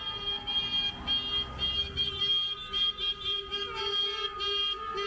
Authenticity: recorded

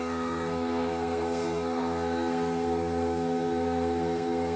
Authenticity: remade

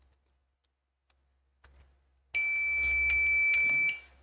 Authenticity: recorded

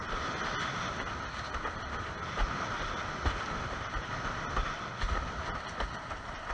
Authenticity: recorded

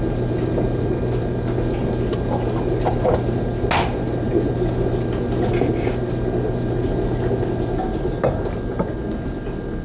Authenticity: recorded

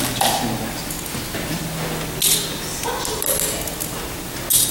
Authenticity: recorded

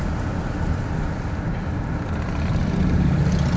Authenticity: recorded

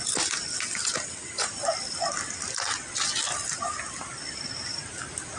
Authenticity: recorded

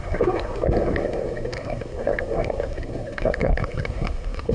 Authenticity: remade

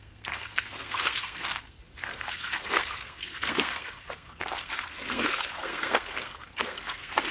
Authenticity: remade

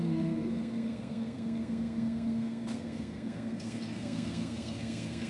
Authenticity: remade